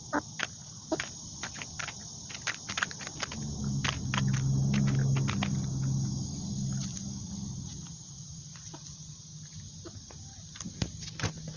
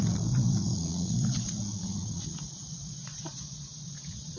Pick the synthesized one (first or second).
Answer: second